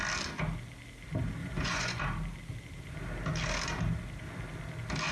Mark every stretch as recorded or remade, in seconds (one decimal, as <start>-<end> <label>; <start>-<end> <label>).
0.0-1.4 recorded; 1.4-2.0 remade; 2.0-5.1 recorded